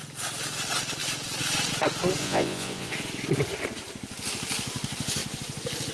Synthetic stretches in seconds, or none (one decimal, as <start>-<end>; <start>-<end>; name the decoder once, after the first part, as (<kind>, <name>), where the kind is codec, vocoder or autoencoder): 2.2-2.9 (vocoder, Vocos)